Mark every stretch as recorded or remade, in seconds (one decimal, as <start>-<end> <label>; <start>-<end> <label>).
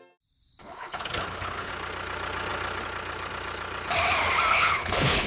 0.0-0.6 recorded; 0.6-1.7 remade; 1.7-4.5 recorded; 4.5-5.3 remade